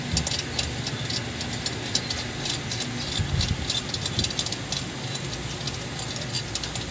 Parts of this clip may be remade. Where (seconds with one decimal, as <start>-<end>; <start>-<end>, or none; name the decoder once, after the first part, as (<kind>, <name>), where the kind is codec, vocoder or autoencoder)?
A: none